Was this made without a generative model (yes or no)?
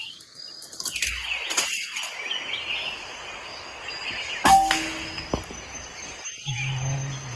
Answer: yes